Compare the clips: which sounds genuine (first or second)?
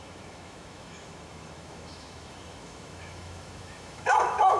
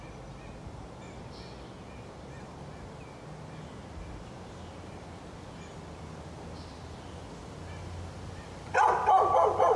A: second